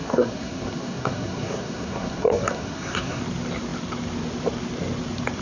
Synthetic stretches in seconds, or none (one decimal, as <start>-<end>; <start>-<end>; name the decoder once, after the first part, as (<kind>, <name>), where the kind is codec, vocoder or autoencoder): 0.0-3.2 (codec, SNAC)